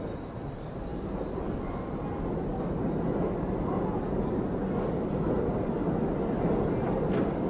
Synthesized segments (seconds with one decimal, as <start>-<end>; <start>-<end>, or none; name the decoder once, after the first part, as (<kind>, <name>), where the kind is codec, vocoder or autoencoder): none